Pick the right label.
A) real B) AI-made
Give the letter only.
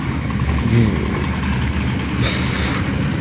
A